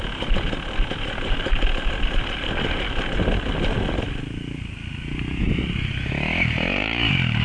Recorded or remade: recorded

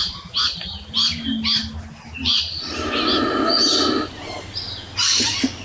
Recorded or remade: recorded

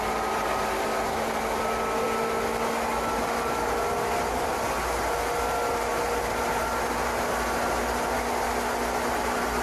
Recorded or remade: recorded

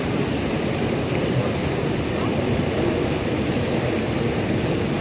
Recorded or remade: recorded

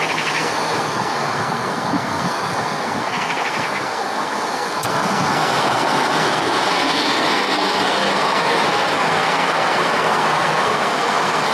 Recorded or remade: remade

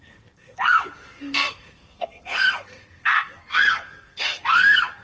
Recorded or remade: remade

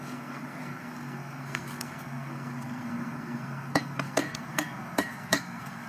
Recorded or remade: remade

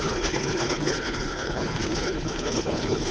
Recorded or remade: remade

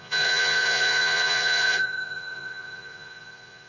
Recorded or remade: remade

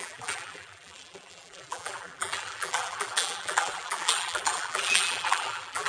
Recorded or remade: remade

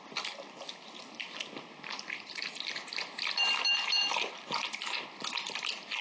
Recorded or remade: recorded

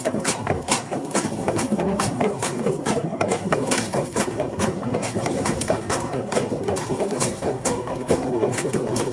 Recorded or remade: remade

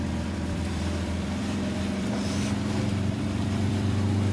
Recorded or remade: remade